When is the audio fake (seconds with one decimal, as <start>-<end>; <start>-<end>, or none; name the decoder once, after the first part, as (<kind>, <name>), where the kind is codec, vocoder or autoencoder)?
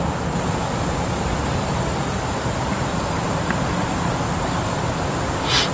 1.5-4.9 (vocoder, BigVGAN v2)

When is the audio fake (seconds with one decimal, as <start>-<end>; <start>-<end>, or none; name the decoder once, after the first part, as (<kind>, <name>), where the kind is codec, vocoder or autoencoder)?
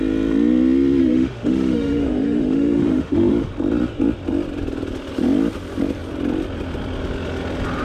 1.0-3.5 (autoencoder, DAC-VAE)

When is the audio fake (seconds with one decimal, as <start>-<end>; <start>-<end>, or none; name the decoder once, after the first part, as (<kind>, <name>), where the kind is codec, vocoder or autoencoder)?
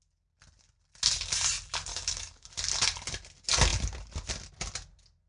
1.9-2.5 (codec, DAC)